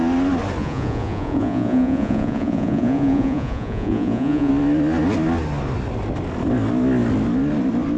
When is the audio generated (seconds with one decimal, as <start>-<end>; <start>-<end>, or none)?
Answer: 0.6-4.5